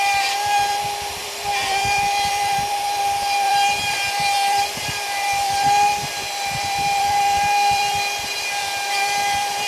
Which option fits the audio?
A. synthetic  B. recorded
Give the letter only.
A